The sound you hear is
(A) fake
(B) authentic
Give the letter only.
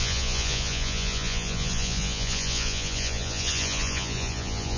A